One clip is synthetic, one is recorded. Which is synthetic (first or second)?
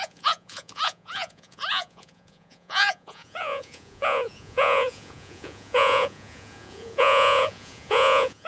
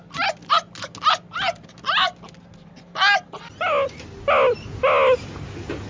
first